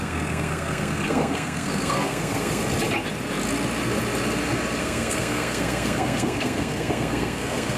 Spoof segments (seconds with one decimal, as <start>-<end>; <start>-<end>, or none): 0.0-2.6; 4.8-7.8